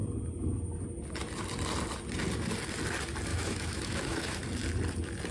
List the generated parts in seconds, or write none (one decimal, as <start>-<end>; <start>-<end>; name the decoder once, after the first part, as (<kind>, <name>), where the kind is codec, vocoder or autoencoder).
3.3-4.4 (autoencoder, DAC-VAE)